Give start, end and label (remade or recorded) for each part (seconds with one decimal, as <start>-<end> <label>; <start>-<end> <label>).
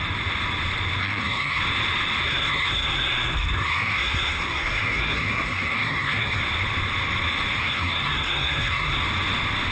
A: 0.0-1.0 recorded; 1.0-1.6 remade; 1.6-2.2 recorded; 2.2-6.4 remade; 6.4-7.6 recorded; 7.6-9.0 remade; 9.0-9.7 recorded